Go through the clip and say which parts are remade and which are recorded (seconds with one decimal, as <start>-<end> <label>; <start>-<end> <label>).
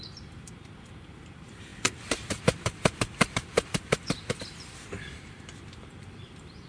0.0-6.7 remade